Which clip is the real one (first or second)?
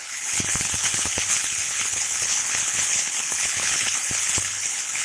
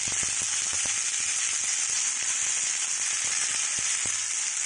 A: second